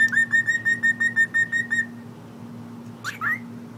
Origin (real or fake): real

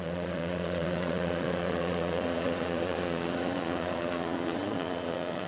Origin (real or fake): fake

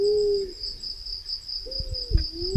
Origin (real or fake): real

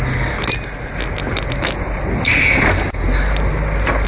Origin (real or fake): real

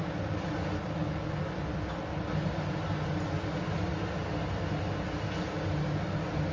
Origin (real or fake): real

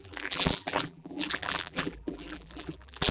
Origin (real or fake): fake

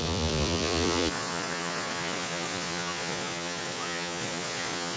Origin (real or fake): fake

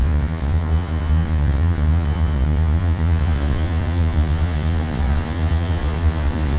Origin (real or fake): fake